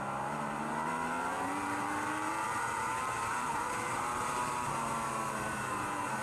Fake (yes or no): yes